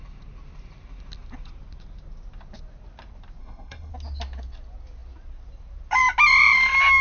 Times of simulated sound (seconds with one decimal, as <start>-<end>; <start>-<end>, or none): 3.4-3.9